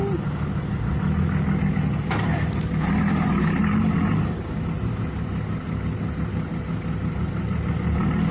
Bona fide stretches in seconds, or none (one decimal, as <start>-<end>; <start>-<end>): 0.0-8.3